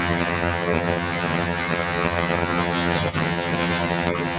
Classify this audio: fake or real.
fake